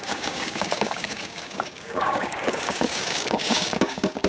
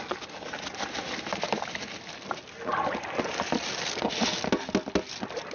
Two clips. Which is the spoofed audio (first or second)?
first